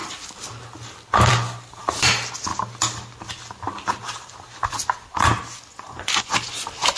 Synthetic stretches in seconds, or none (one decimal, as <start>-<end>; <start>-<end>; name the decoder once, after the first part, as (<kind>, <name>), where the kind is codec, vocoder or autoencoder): 5.7-6.3 (vocoder, Vocos)